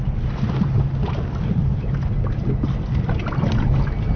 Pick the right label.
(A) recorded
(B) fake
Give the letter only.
A